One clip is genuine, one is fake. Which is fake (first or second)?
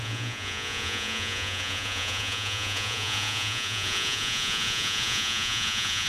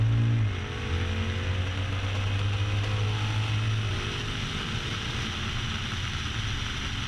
first